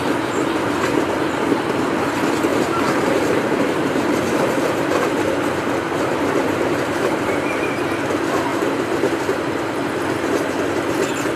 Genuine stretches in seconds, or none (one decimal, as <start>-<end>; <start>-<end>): 0.0-2.5; 7.8-8.5; 10.0-11.4